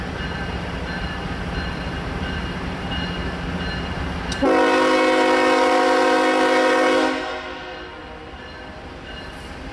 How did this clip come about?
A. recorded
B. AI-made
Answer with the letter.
A